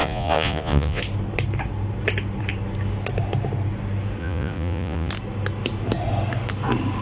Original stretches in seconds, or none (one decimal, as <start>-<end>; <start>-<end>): 1.0-4.2; 5.1-7.0